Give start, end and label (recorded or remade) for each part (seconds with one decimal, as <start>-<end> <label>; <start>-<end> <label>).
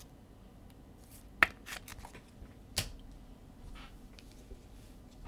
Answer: 0.0-5.3 recorded